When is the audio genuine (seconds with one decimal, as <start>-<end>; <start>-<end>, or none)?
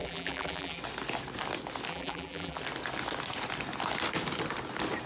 0.8-1.9; 2.6-5.1